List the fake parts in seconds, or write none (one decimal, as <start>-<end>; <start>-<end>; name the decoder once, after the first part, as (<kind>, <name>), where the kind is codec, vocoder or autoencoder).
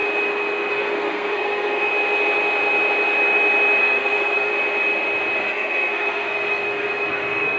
0.7-1.9 (codec, SNAC); 3.8-4.5; 5.4-7.6